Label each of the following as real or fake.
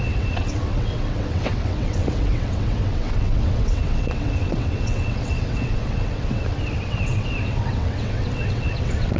fake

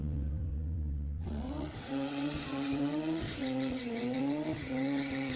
fake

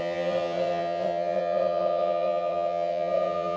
fake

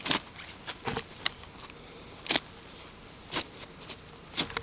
real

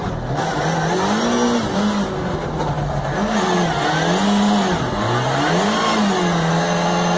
real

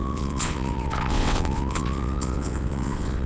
fake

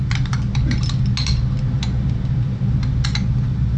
real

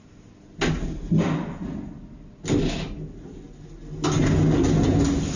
real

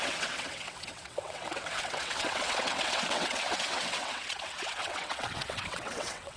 fake